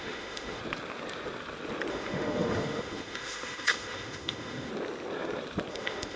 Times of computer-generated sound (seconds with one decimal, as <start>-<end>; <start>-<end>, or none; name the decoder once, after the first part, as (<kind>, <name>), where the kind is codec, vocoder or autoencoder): 0.0-0.6 (autoencoder, DAC-VAE); 1.9-4.7; 5.7-6.2